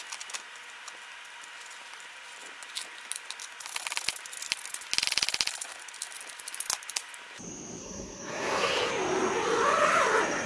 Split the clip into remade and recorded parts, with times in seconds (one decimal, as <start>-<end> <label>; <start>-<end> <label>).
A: 0.0-7.8 recorded; 7.8-8.9 remade; 8.9-10.5 recorded